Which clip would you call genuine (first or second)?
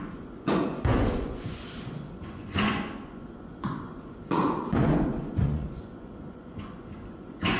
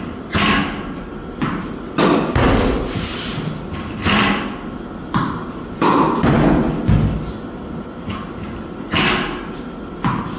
second